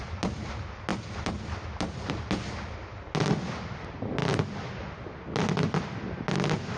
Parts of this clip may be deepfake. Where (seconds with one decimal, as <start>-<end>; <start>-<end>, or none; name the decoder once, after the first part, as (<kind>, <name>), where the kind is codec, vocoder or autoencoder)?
none